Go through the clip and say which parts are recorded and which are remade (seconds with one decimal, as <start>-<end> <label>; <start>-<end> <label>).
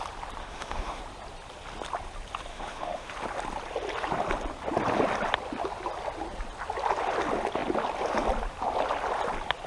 0.0-0.4 recorded; 0.4-1.0 remade; 1.0-2.5 recorded; 2.5-3.1 remade; 3.1-9.7 recorded